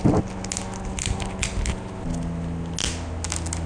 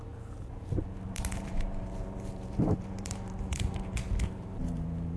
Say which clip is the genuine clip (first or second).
first